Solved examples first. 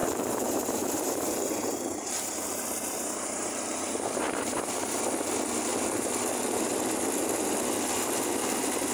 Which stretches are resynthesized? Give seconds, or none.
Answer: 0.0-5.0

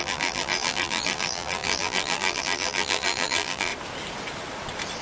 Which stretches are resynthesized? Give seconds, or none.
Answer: 0.0-3.7

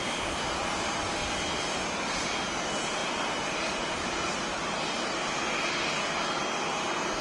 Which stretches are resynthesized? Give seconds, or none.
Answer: none

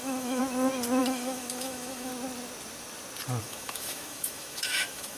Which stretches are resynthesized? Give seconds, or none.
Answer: 0.0-0.4; 1.0-2.1; 3.4-5.2

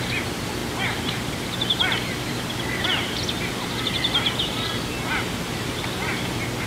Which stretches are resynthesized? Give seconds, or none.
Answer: none

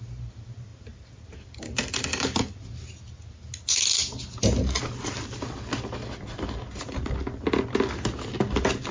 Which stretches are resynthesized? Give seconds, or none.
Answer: none

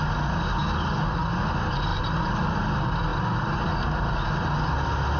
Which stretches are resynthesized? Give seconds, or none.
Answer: 1.9-2.6